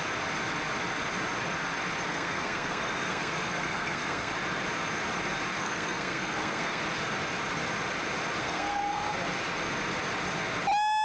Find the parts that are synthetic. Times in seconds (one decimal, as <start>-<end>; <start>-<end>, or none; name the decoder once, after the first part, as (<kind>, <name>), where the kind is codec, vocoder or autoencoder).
2.1-4.3 (codec, SNAC); 5.6-6.8; 8.4-9.1